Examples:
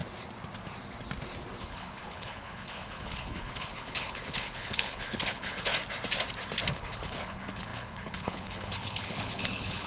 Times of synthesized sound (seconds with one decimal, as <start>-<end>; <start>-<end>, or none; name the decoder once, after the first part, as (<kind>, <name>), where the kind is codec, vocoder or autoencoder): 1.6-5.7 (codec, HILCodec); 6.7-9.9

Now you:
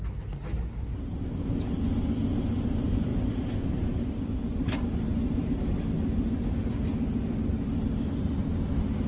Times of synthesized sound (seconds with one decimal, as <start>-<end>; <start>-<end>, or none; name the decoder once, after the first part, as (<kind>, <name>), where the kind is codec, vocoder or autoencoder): 0.9-1.5 (vocoder, BigVGAN v2); 3.1-5.0

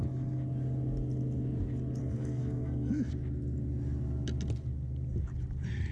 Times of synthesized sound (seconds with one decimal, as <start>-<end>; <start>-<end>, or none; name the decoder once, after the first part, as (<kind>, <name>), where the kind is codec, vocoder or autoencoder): 2.0-3.1 (codec, SNAC)

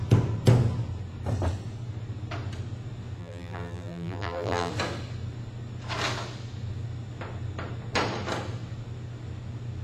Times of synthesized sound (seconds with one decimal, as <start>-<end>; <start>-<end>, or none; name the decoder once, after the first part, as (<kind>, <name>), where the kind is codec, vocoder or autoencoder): 3.2-4.7 (vocoder, BigVGAN v2)

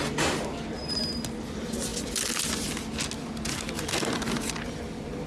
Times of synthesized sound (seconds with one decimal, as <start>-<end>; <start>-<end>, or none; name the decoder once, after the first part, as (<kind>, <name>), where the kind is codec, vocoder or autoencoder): none

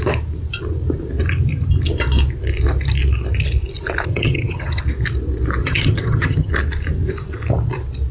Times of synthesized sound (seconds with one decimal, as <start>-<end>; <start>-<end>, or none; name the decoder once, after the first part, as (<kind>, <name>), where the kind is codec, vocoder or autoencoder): 4.1-4.8 (vocoder, HiFi-GAN); 5.6-6.5